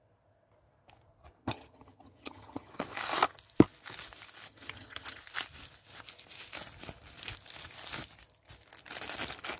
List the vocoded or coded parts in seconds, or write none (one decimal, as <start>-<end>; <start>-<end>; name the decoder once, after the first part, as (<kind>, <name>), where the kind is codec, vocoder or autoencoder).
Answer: 1.4-2.7 (vocoder, HiFi-GAN); 4.5-5.2